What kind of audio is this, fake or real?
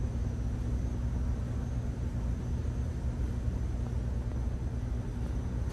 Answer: real